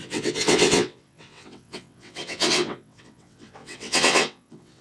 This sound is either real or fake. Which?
fake